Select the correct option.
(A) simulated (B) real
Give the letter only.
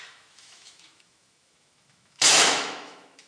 A